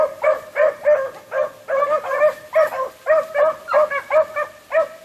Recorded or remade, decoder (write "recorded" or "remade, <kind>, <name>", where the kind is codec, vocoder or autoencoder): recorded